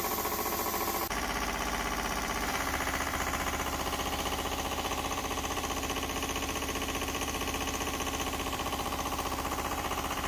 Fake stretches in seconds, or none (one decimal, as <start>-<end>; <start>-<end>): 0.0-10.3